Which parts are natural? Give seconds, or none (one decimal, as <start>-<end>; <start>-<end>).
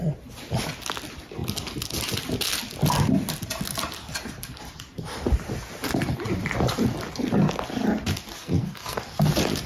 0.0-8.4; 9.0-9.7